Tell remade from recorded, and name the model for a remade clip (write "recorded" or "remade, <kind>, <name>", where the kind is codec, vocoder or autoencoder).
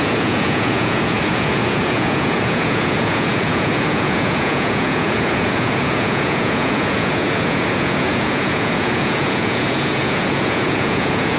remade, vocoder, Vocos